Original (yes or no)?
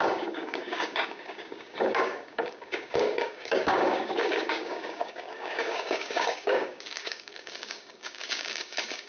no